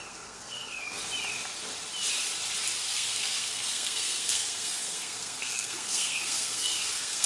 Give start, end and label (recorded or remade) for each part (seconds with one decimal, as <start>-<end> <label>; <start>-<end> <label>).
0.0-1.0 remade; 1.0-2.8 recorded; 2.8-7.3 remade